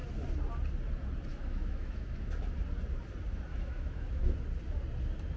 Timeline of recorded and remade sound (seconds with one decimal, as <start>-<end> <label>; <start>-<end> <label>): 0.0-1.3 recorded; 1.3-2.3 remade; 2.3-3.5 recorded; 3.5-4.2 remade; 4.2-5.4 recorded